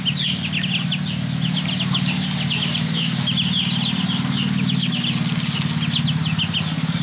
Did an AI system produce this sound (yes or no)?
no